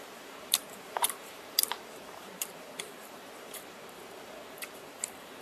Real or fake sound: fake